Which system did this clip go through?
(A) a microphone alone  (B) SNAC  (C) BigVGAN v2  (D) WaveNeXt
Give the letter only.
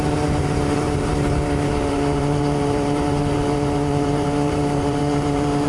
C